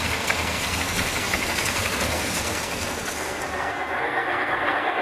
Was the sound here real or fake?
fake